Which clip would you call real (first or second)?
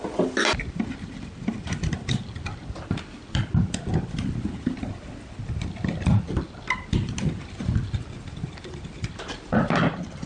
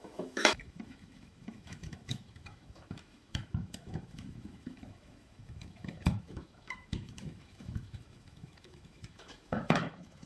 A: first